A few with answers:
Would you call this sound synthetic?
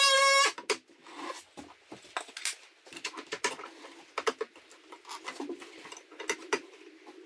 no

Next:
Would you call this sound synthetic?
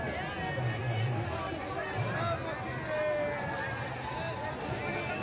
no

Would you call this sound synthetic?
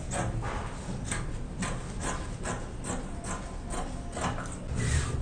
no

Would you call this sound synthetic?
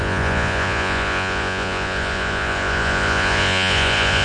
yes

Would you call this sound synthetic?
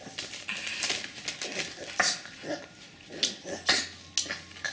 no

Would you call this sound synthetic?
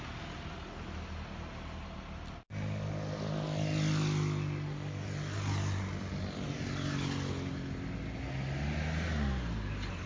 no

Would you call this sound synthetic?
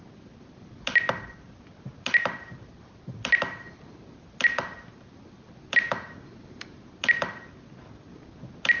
no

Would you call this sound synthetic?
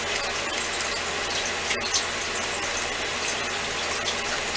no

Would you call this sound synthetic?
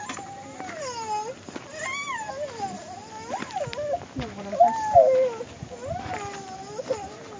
no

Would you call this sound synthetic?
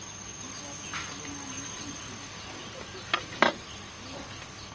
no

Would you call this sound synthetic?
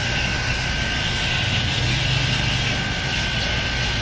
no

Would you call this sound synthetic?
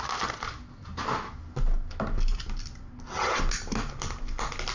no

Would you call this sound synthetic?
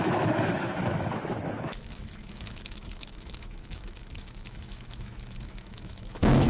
yes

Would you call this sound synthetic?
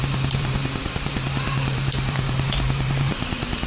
yes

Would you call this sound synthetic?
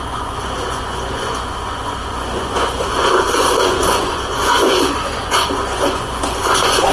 yes